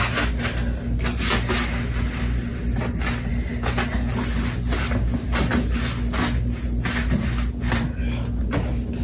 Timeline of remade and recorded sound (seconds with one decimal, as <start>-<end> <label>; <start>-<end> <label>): 0.0-9.0 recorded